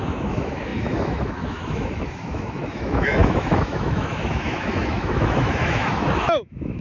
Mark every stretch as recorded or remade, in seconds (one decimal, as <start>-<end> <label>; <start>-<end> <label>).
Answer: 0.0-6.8 remade